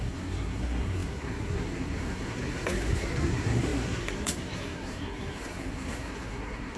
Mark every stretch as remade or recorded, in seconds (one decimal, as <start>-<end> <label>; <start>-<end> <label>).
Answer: 0.0-6.8 remade